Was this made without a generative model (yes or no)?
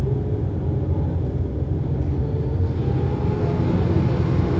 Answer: yes